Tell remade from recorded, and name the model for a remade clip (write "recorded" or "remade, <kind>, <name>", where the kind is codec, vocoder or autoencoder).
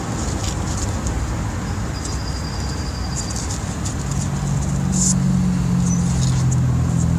recorded